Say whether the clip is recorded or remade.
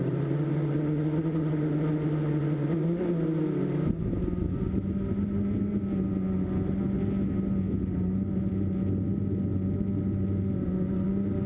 recorded